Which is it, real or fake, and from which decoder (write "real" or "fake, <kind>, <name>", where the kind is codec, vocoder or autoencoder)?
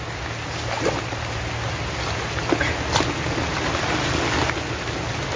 real